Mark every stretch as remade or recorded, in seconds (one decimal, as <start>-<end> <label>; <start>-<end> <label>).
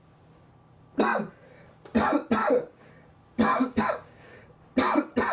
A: 0.0-2.4 recorded; 2.4-2.9 remade; 2.9-3.5 recorded; 3.5-4.5 remade; 4.5-5.3 recorded